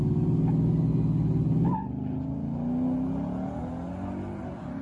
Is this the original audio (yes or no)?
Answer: yes